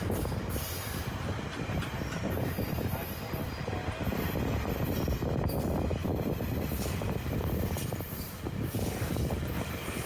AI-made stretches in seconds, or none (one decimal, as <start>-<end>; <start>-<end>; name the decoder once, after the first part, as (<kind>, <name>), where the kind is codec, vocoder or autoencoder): 6.0-9.2 (vocoder, BigVGAN v2)